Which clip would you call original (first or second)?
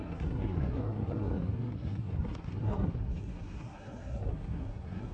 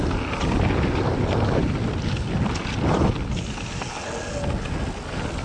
second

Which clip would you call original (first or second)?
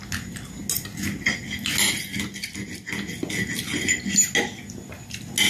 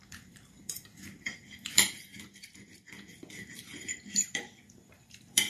first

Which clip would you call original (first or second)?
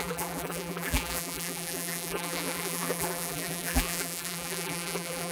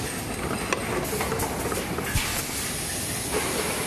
second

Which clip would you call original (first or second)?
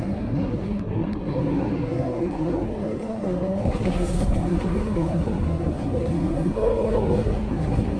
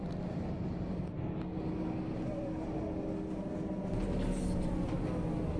second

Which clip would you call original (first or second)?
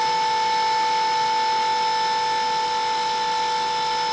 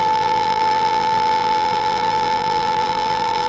first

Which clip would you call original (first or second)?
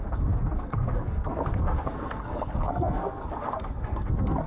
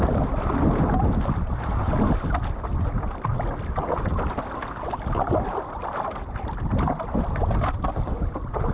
second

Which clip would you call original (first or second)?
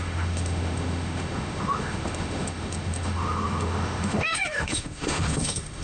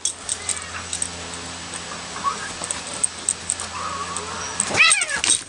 second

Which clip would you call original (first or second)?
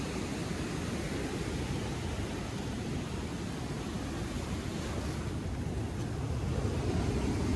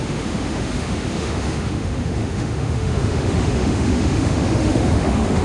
first